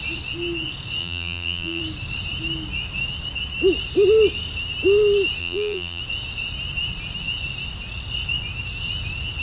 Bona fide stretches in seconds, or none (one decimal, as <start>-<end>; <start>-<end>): 0.0-1.0; 1.8-5.4; 6.0-9.4